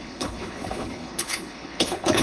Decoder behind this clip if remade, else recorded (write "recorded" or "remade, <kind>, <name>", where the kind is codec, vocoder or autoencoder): remade, codec, HILCodec